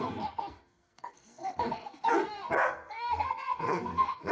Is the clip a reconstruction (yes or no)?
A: yes